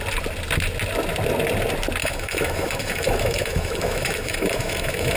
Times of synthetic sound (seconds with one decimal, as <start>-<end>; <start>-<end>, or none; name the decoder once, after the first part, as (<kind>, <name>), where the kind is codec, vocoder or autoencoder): 2.0-5.2 (autoencoder, DAC-VAE)